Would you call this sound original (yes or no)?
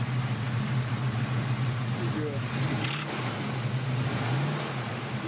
yes